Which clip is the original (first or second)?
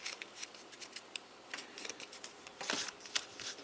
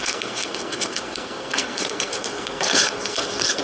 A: first